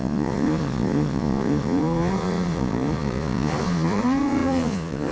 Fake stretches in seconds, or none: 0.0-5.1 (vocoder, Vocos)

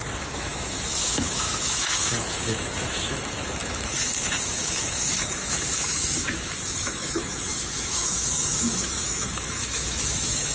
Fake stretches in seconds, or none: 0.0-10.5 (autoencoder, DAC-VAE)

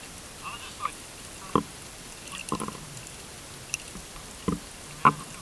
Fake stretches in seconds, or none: none